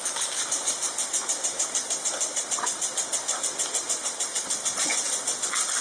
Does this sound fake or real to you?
real